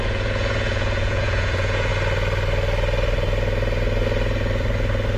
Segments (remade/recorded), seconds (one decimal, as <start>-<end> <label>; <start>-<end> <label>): 0.0-1.9 remade; 1.9-5.2 recorded